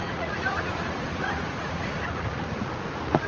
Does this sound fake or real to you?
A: fake